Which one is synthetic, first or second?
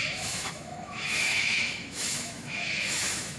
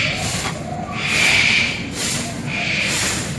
first